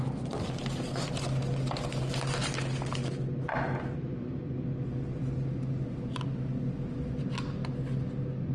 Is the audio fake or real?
real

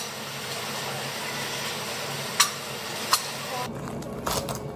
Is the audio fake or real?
real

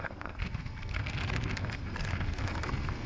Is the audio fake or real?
fake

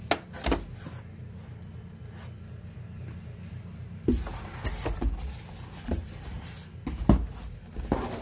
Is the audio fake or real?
real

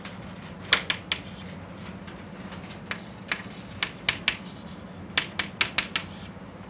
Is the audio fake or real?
real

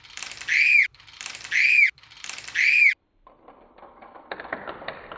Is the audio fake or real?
fake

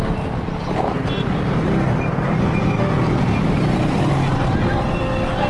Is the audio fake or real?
real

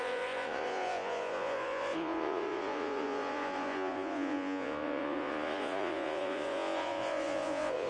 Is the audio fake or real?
fake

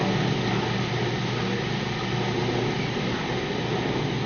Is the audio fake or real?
real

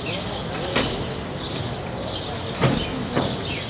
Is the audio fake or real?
real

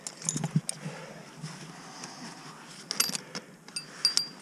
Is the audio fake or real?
real